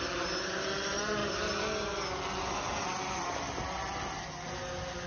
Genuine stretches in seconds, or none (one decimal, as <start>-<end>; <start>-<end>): 0.0-5.1